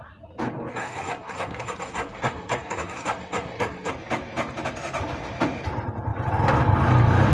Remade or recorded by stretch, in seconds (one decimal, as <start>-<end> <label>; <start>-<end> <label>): 0.0-0.7 recorded; 0.7-3.9 remade; 3.9-7.3 recorded

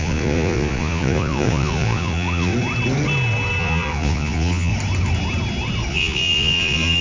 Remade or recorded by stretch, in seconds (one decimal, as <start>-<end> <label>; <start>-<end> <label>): 0.0-2.5 remade; 2.5-3.6 recorded; 3.6-4.7 remade; 4.7-5.9 recorded; 5.9-7.0 remade